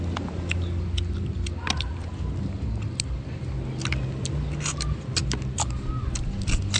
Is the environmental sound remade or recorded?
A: recorded